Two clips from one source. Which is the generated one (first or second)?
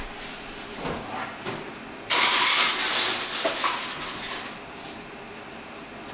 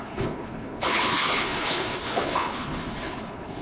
second